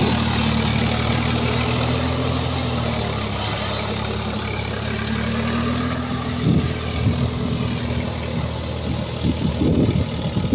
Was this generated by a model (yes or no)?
no